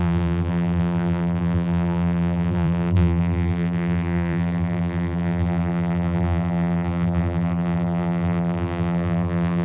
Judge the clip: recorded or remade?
remade